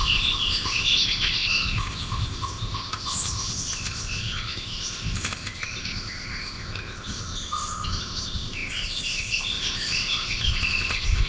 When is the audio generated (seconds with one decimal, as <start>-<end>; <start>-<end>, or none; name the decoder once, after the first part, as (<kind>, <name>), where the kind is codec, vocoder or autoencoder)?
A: 0.0-11.3 (codec, ZipCodec)